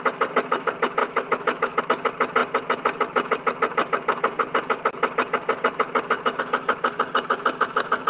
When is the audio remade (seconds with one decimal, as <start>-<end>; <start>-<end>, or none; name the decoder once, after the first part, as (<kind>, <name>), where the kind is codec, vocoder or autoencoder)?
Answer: 1.0-1.8 (autoencoder, DAC-VAE)